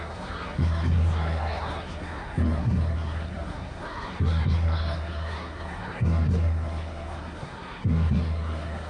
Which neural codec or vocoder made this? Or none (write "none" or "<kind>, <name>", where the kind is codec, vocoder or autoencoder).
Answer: codec, SNAC